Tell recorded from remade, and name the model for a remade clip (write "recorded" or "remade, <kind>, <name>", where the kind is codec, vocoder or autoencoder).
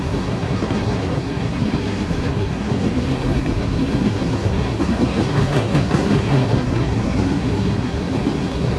remade, codec, SNAC